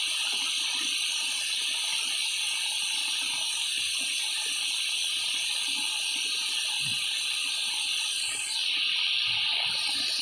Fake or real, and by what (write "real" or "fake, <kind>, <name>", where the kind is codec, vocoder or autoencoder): real